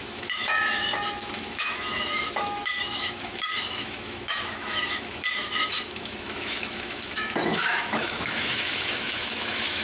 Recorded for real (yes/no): no